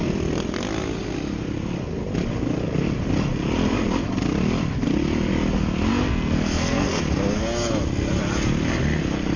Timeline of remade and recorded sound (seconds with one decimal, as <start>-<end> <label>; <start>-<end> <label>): 0.0-5.9 recorded; 5.9-7.0 remade; 7.0-9.4 recorded